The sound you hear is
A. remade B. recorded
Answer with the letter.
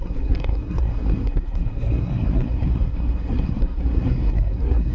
A